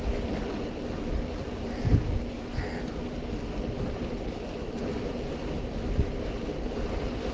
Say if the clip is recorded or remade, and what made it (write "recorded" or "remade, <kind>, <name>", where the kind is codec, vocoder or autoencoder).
recorded